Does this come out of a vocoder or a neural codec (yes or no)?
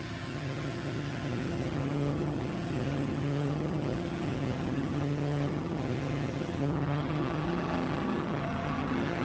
yes